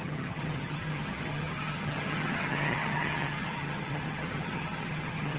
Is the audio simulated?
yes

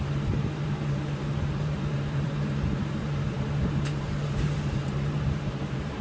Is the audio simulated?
yes